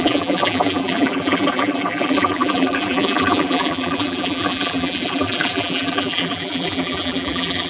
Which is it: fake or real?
fake